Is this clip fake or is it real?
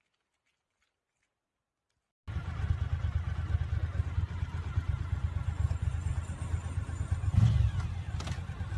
real